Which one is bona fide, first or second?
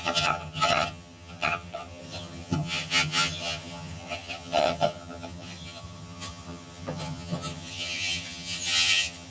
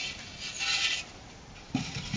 second